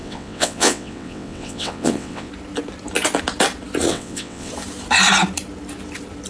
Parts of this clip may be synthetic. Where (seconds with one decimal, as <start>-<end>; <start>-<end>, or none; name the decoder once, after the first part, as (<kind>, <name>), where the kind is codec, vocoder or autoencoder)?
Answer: 0.0-2.3 (vocoder, WaveNeXt); 3.9-4.5

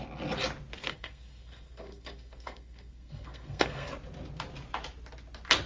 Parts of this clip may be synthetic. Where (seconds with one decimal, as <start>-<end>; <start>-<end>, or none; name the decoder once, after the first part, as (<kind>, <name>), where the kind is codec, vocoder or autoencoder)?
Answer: 0.9-3.9 (codec, SNAC)

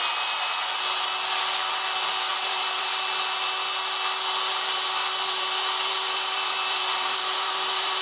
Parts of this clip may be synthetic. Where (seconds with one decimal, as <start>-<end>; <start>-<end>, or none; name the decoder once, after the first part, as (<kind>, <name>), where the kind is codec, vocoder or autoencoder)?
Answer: 2.3-2.9 (vocoder, BigVGAN v2); 4.5-8.0

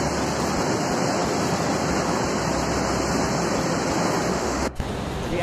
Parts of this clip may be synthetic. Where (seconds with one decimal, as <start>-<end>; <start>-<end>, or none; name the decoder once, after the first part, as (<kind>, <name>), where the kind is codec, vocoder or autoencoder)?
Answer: 4.3-4.8 (autoencoder, DAC-VAE)

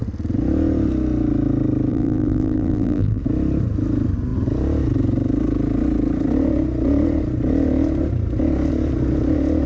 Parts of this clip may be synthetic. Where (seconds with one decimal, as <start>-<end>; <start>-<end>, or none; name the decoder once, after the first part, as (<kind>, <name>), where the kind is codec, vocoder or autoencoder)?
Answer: 1.9-3.2 (vocoder, BigVGAN v2)

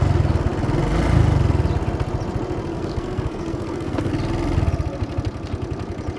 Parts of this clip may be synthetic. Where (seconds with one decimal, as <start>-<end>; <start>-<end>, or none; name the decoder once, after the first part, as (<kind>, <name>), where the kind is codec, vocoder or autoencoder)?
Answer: 2.7-4.1 (codec, SNAC)

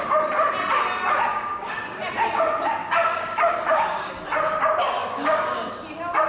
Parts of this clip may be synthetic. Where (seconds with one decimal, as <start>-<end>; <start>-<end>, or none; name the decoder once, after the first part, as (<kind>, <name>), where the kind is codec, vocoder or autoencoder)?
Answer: 1.3-2.0 (codec, DAC); 2.8-4.1; 5.0-5.8

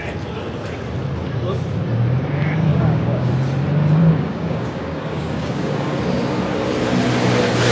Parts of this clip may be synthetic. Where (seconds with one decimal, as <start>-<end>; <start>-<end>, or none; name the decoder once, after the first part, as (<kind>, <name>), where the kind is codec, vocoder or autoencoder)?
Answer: 2.7-3.3 (codec, DAC); 4.0-6.0